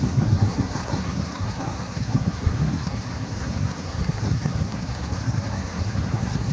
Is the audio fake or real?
fake